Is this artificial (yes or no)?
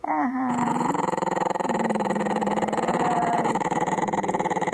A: yes